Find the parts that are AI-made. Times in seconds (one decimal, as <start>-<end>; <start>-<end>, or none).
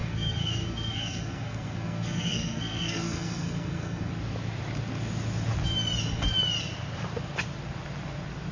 0.0-4.1